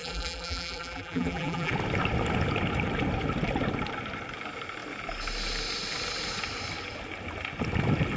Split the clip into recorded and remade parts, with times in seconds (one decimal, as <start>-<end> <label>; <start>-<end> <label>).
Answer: 0.0-1.7 remade; 1.7-8.2 recorded